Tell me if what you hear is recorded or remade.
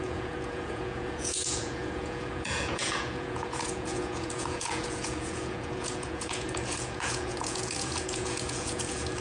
remade